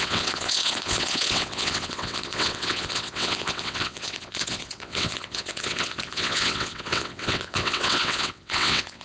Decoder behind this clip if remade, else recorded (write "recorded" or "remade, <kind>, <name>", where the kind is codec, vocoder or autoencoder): remade, vocoder, WaveNeXt